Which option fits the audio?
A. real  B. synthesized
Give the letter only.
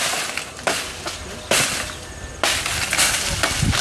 A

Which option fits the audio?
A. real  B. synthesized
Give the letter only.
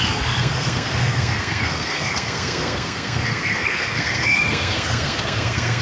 B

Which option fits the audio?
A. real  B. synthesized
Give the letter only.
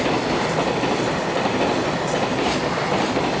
A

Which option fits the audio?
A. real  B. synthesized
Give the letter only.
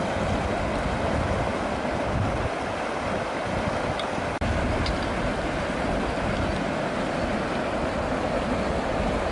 A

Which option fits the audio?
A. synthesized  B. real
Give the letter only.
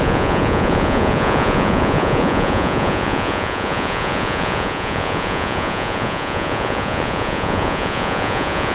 A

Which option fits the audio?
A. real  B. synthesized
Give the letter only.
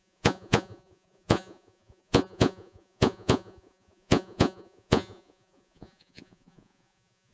B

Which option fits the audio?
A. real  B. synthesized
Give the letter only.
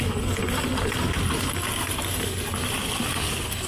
A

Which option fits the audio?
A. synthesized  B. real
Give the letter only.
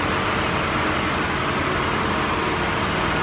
B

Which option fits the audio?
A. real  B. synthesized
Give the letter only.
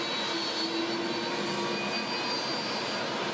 A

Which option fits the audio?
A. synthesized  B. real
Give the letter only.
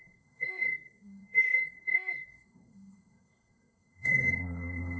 A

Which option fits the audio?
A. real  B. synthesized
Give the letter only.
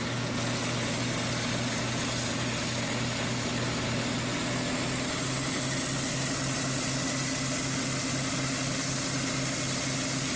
A